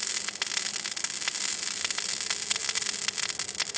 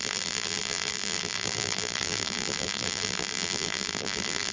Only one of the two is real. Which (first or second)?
first